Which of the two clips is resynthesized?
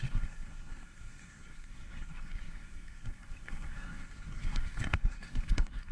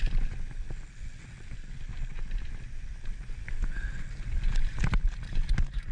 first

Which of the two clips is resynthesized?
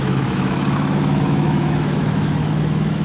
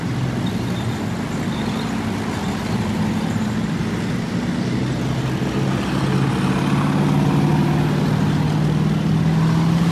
first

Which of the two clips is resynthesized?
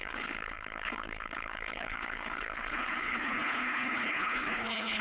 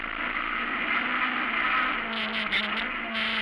first